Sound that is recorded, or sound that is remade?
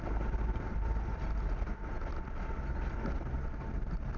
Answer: recorded